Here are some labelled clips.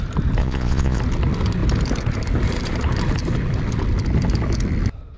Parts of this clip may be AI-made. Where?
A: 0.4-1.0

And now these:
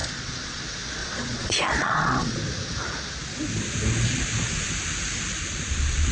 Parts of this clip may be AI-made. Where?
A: 0.0-0.6; 1.0-2.4

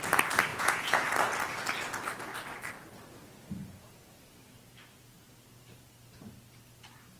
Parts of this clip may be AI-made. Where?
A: 0.5-1.0

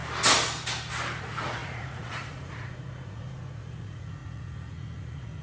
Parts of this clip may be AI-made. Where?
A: 1.2-5.4

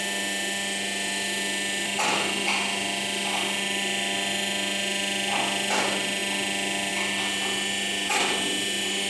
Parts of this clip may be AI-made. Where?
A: none

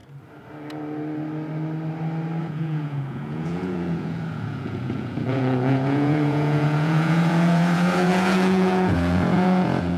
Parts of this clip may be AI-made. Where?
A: 2.4-10.0

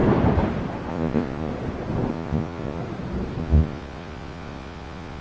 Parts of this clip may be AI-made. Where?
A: 0.9-1.5; 2.1-2.8; 3.4-5.2